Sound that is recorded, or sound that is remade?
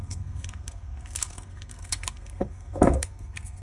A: remade